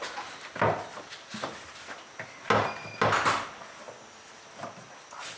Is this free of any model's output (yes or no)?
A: yes